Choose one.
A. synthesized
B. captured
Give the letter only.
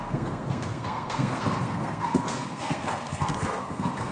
A